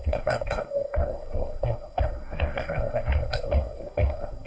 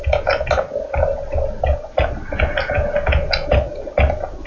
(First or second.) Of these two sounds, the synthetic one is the first